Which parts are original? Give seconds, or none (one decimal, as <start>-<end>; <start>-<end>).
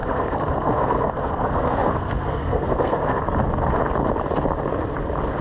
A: 3.2-5.4